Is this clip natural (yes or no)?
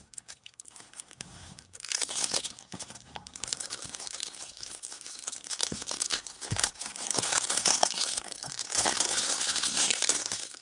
no